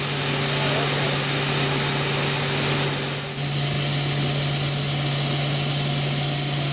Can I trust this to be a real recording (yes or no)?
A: yes